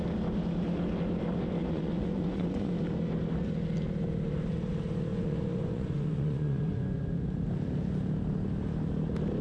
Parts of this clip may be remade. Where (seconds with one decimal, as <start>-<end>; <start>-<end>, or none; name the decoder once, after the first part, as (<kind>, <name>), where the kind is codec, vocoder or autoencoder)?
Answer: 1.6-2.7 (vocoder, Vocos); 5.1-7.0